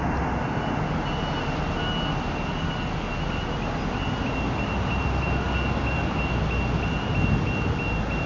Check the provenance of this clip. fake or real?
real